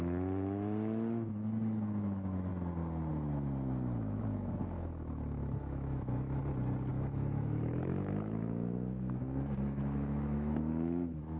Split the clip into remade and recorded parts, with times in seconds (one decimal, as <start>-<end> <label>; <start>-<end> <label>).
0.0-2.5 remade; 2.5-3.1 recorded; 3.1-6.4 remade; 6.4-6.9 recorded; 6.9-11.4 remade